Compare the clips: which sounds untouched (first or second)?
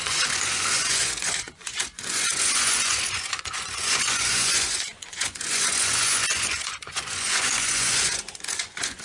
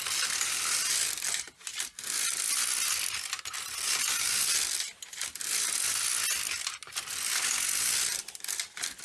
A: second